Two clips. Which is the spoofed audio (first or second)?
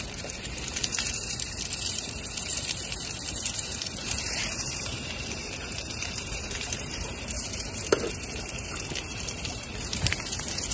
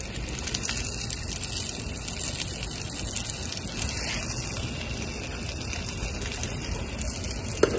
first